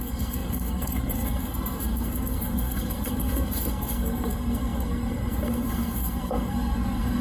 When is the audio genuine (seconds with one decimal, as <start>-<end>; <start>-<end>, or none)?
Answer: none